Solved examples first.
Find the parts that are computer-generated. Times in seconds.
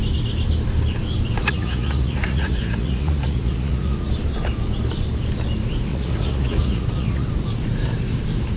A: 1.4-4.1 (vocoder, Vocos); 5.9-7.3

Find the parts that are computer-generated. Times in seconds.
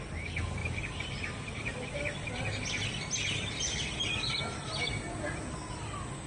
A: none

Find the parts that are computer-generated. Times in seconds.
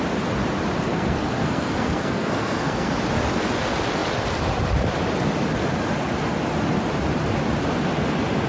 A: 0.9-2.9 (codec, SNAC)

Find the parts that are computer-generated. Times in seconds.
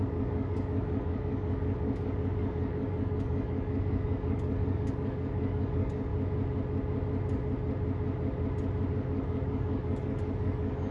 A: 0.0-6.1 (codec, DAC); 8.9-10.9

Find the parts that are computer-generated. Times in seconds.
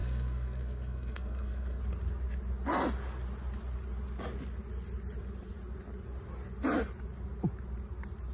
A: 0.0-1.8 (codec, SNAC)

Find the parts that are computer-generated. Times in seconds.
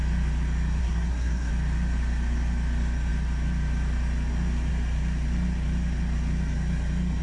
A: 0.8-1.5 (codec, SNAC)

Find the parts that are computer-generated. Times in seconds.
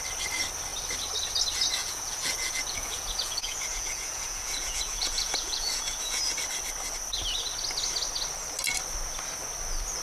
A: 1.8-6.2 (vocoder, Vocos)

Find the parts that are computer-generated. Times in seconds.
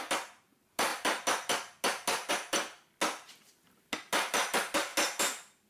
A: none